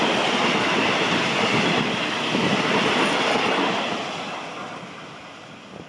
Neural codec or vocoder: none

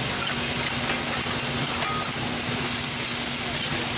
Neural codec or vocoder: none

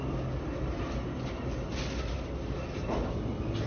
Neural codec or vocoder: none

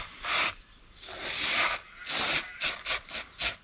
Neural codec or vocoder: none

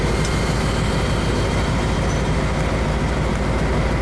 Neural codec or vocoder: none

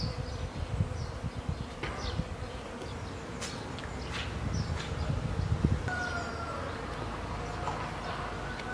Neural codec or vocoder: none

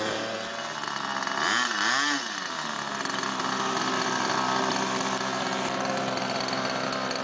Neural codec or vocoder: none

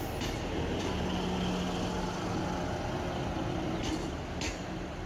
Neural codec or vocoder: none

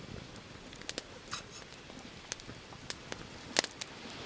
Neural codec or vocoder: none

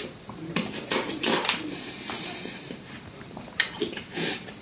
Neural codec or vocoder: vocoder, BigVGAN v2